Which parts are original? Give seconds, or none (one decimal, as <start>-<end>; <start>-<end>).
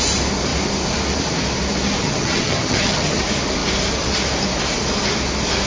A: 0.0-2.0; 3.2-5.7